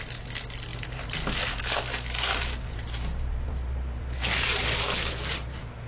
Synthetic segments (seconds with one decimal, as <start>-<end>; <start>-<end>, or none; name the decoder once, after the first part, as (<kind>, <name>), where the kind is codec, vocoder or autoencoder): 0.7-1.6 (vocoder, BigVGAN v2); 2.3-5.9